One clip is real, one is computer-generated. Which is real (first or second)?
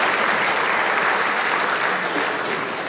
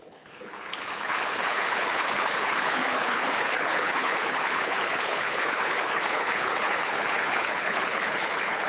first